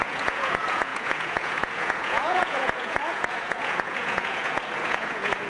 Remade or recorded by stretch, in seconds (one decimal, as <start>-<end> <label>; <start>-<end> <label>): 0.0-5.5 remade